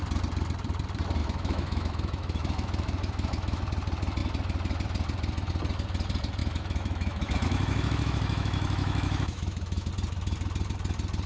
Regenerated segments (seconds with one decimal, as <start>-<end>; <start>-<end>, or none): 1.2-3.6; 6.4-9.9